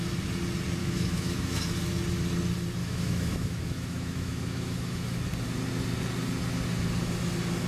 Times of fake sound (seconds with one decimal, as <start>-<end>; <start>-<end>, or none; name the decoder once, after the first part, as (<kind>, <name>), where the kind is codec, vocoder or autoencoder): 0.8-1.6 (autoencoder, DAC-VAE); 2.8-5.2